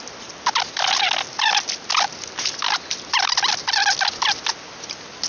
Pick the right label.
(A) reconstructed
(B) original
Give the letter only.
B